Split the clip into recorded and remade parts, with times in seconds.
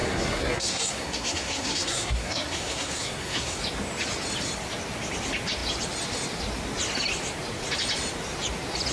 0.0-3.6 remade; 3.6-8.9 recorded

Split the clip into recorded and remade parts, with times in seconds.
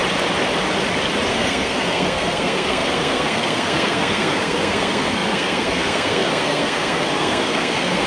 0.0-1.3 recorded; 1.3-8.1 remade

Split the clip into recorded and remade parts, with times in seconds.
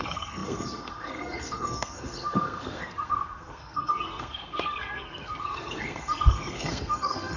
0.0-7.4 remade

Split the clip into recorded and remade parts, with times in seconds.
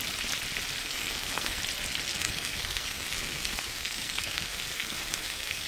0.0-0.8 recorded; 0.8-1.6 remade; 1.6-2.1 recorded; 2.1-5.7 remade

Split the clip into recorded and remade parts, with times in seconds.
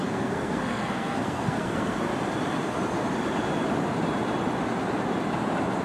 0.0-2.1 remade; 2.1-5.8 recorded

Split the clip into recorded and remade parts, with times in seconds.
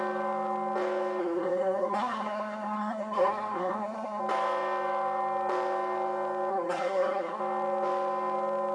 0.0-1.2 recorded; 1.2-4.2 remade; 4.2-6.5 recorded; 6.5-7.4 remade; 7.4-8.7 recorded